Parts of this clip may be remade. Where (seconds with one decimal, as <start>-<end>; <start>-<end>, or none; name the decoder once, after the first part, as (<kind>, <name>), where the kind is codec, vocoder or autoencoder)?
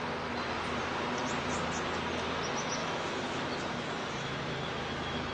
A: 2.8-5.3 (autoencoder, DAC-VAE)